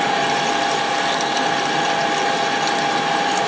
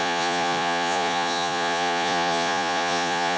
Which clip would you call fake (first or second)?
second